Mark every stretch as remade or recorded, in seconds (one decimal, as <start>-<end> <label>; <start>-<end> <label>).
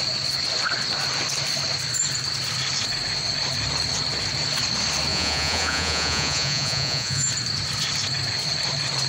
0.0-5.1 recorded; 5.1-7.3 remade; 7.3-9.1 recorded